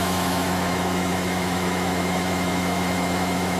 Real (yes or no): no